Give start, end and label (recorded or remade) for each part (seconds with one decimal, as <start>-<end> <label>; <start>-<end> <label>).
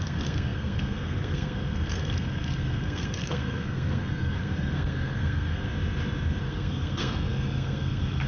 0.0-5.7 remade; 5.7-6.4 recorded; 6.4-8.3 remade